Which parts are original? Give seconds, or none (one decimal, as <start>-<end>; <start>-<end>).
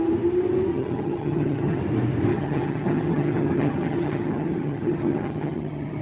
0.0-0.7; 1.8-2.3